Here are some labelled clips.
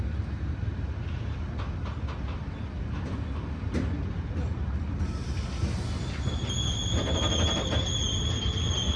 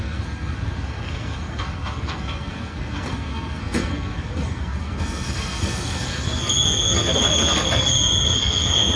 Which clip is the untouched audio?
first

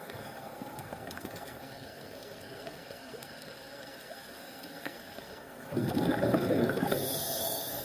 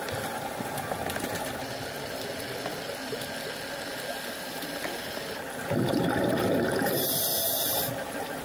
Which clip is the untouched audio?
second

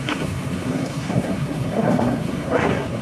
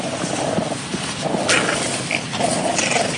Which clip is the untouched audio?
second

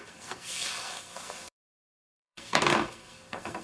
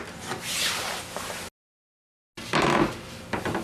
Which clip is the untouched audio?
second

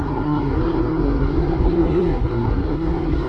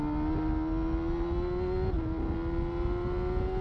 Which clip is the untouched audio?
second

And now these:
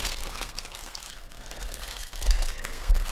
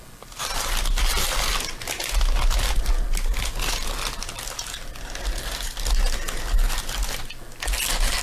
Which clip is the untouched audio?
second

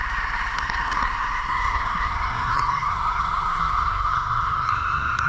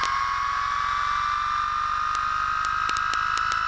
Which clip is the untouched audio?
second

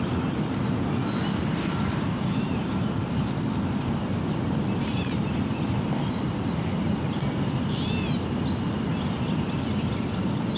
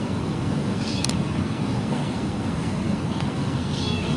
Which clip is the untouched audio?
first